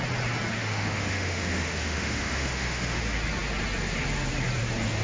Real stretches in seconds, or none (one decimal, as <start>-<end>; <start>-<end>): 0.0-0.6; 3.0-5.0